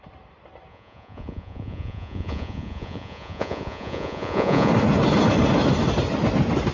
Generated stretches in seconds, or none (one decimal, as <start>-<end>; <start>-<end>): 0.7-4.7